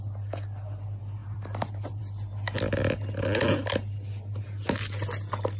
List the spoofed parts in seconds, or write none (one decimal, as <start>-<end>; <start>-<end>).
1.2-2.0